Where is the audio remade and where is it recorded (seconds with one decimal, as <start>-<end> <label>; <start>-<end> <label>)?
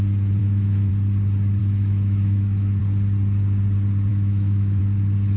0.0-0.4 recorded; 0.4-0.9 remade; 0.9-1.6 recorded; 1.6-2.8 remade; 2.8-4.1 recorded; 4.1-4.8 remade; 4.8-5.4 recorded